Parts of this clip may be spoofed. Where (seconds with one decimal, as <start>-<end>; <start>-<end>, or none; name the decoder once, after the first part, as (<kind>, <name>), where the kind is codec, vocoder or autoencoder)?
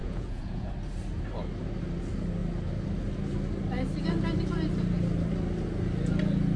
0.0-0.7 (vocoder, Vocos)